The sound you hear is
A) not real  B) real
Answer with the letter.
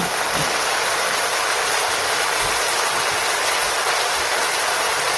A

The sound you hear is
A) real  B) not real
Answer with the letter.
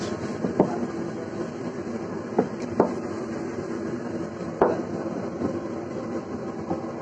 A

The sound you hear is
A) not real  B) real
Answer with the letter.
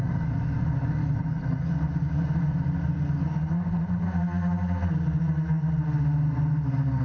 B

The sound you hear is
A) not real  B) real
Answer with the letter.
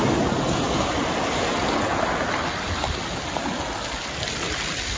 B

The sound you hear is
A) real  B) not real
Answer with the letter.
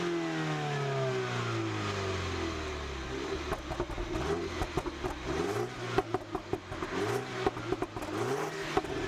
A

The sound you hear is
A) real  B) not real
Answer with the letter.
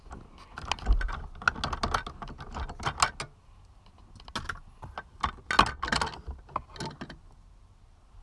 A